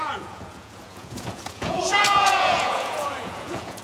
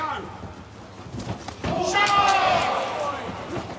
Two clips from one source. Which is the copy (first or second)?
first